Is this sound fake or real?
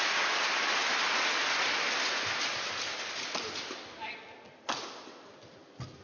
real